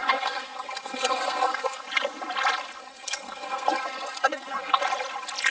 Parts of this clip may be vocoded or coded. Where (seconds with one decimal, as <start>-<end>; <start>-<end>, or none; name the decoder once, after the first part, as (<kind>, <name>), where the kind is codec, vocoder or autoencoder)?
0.0-1.8 (codec, SNAC); 2.8-4.8